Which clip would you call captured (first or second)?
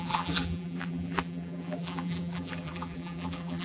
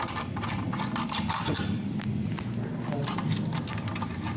second